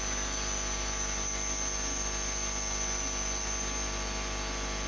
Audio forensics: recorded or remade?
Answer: recorded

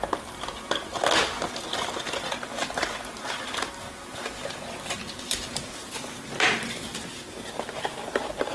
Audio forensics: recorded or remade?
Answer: recorded